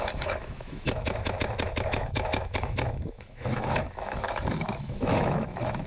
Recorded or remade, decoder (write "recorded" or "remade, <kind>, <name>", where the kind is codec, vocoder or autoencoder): remade, autoencoder, DAC-VAE